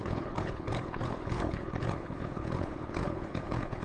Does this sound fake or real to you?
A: fake